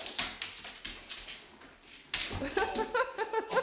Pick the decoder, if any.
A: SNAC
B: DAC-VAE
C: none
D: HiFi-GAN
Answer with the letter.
C